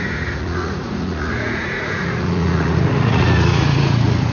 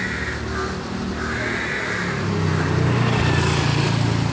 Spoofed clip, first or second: first